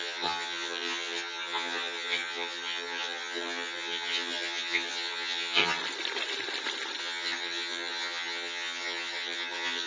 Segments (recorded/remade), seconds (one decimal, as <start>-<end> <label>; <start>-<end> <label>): 0.0-5.8 remade; 5.8-7.0 recorded; 7.0-9.9 remade

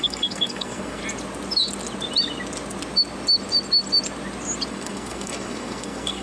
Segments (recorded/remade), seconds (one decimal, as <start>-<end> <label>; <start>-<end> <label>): 0.0-1.0 remade; 1.0-4.7 recorded; 4.7-6.2 remade

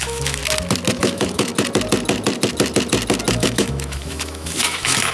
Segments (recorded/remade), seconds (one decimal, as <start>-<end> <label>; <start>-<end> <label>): 0.0-0.4 remade; 0.4-1.0 recorded; 1.0-1.5 remade; 1.5-3.3 recorded; 3.3-5.1 remade

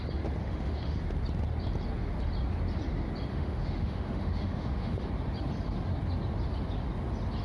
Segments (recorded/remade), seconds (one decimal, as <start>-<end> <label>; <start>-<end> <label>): 0.0-0.4 recorded; 0.4-1.0 remade; 1.0-3.3 recorded; 3.3-5.1 remade; 5.1-7.4 recorded

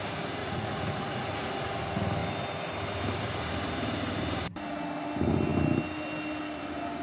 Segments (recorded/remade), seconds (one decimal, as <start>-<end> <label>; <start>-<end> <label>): 0.0-0.4 recorded; 0.4-1.5 remade; 1.5-7.0 recorded

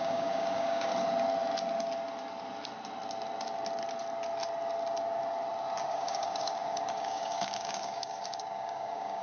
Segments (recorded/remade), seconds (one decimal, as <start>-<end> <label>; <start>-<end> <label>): 0.0-0.9 remade; 0.9-5.9 recorded; 5.9-9.2 remade